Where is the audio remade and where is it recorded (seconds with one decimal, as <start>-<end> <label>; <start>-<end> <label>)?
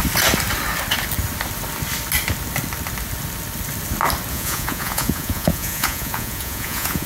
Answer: 0.0-4.3 recorded; 4.3-7.1 remade